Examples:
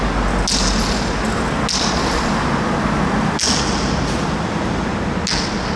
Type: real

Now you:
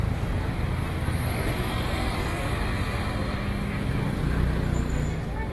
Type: real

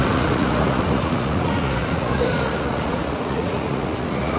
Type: fake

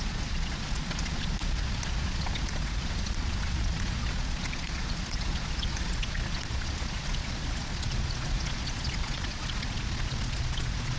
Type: fake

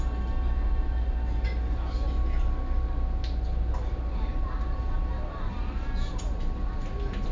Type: real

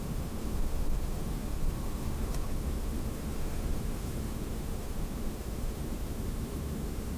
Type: fake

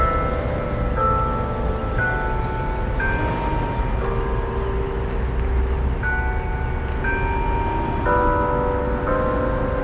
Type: real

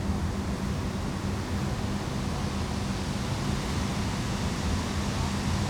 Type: real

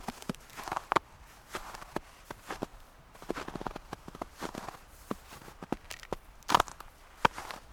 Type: real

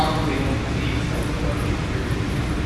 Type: real